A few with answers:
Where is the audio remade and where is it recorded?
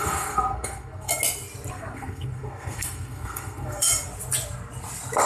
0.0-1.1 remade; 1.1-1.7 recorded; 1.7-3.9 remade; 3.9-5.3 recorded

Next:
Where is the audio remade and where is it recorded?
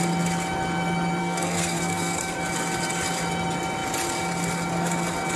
0.0-1.2 recorded; 1.2-2.4 remade; 2.4-5.4 recorded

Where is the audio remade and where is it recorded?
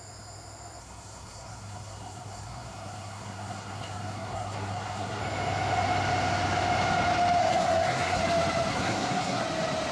0.0-0.8 recorded; 0.8-5.2 remade; 5.2-7.4 recorded; 7.4-8.2 remade; 8.2-8.7 recorded; 8.7-9.4 remade; 9.4-9.9 recorded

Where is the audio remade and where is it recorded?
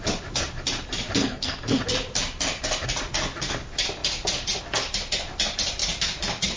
0.0-1.2 recorded; 1.2-1.8 remade; 1.8-6.6 recorded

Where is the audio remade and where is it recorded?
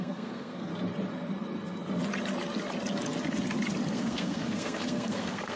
0.0-0.7 remade; 0.7-3.9 recorded; 3.9-5.6 remade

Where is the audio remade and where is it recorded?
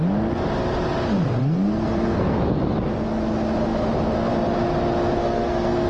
0.0-1.4 recorded; 1.4-2.4 remade; 2.4-5.2 recorded; 5.2-5.9 remade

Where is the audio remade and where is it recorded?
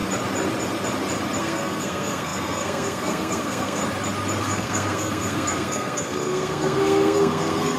0.0-1.4 recorded; 1.4-3.8 remade; 3.8-4.4 recorded; 4.4-7.8 remade